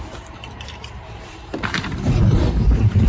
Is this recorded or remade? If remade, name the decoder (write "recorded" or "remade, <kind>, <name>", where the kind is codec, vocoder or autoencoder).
remade, vocoder, BigVGAN v2